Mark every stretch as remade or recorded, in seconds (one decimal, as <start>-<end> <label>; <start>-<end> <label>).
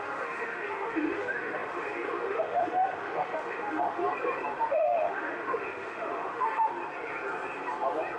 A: 0.0-4.0 remade; 4.0-4.7 recorded; 4.7-6.7 remade; 6.7-8.2 recorded